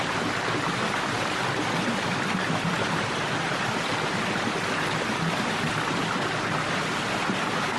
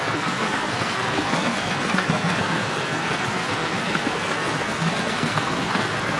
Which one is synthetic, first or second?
second